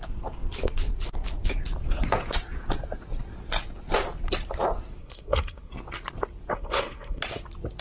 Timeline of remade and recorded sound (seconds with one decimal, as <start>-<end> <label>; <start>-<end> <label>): 0.0-5.0 recorded; 5.0-5.7 remade; 5.7-6.5 recorded; 6.5-7.2 remade; 7.2-7.8 recorded